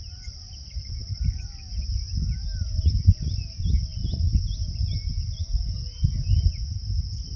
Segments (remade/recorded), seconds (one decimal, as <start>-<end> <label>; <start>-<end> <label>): 0.0-7.4 recorded